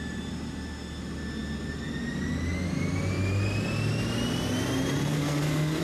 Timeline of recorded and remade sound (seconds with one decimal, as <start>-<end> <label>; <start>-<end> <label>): 0.0-5.1 recorded; 5.1-5.8 remade